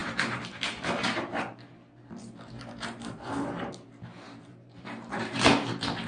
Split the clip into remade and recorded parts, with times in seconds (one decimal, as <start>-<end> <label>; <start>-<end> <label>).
0.0-6.1 remade